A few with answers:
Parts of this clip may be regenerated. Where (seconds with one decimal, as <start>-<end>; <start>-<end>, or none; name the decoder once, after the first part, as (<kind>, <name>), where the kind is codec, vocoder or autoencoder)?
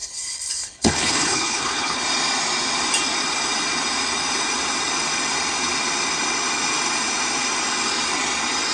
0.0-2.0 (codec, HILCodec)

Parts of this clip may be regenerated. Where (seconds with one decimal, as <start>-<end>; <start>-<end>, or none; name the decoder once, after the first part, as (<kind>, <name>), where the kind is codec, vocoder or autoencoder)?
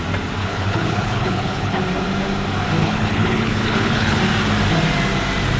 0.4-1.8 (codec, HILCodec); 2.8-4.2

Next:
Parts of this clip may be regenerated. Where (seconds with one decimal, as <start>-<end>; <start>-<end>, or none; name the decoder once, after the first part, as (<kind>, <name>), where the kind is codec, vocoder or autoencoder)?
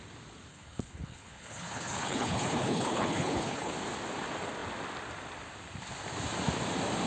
0.5-3.7 (codec, HILCodec)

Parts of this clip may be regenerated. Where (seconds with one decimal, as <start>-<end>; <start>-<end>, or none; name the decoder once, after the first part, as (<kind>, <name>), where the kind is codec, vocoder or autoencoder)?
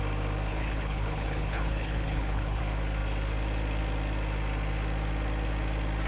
0.5-2.6 (codec, HILCodec)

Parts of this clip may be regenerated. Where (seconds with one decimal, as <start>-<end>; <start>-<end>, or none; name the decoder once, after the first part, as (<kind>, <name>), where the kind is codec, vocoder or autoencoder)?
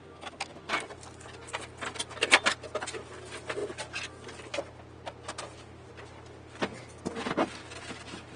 none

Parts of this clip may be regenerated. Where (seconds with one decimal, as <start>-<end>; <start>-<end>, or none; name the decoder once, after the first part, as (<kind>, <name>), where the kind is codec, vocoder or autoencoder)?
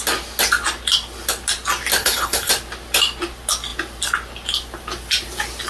2.0-2.5 (codec, HILCodec)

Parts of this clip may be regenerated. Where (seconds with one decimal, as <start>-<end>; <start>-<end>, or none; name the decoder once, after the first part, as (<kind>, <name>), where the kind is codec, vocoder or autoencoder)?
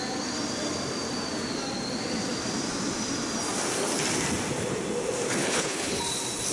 5.4-6.0 (codec, HILCodec)